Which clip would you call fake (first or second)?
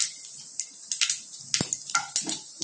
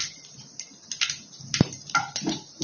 second